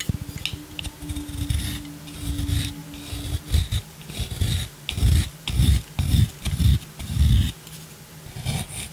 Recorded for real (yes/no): yes